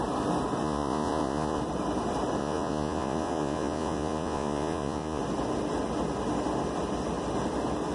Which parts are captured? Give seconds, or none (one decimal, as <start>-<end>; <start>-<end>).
0.0-0.6; 1.6-2.4; 5.2-7.9